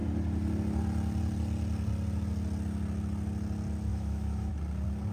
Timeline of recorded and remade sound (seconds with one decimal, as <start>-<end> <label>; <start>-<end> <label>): 0.0-3.9 recorded; 3.9-4.5 remade; 4.5-5.1 recorded